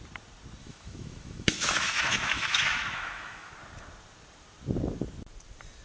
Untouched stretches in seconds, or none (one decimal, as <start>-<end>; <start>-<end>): 0.0-0.6; 3.5-5.8